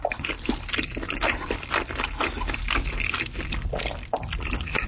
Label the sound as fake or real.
real